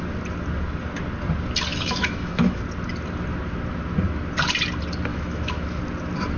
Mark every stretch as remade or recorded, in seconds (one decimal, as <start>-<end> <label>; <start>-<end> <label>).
0.0-1.7 recorded; 1.7-2.6 remade; 2.6-5.1 recorded; 5.1-5.8 remade; 5.8-6.4 recorded